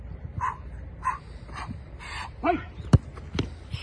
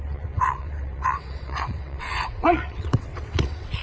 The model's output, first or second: second